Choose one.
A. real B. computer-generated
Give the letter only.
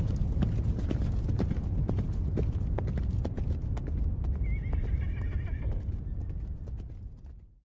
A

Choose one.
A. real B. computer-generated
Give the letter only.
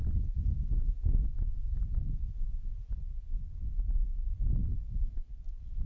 A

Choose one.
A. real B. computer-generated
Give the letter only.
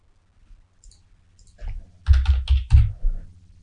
A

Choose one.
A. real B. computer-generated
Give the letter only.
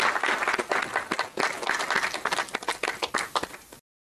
A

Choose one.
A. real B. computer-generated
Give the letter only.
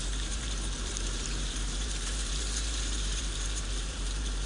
B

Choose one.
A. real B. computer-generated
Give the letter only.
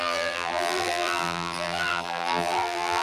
B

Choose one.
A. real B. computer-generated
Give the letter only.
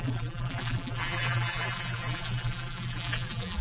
B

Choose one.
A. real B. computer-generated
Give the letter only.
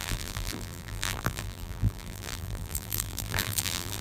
B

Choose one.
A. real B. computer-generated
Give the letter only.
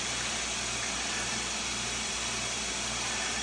A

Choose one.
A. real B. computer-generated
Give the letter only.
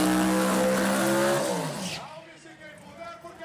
A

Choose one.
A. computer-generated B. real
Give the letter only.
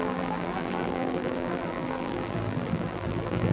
A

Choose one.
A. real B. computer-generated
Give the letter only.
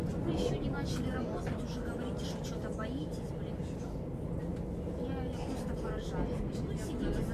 A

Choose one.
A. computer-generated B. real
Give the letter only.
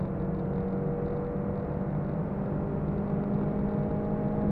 B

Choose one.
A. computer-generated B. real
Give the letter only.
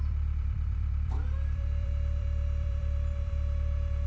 A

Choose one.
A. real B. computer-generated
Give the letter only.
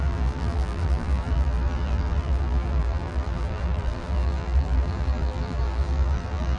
B